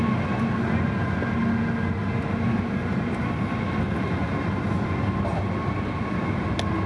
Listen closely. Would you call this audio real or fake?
real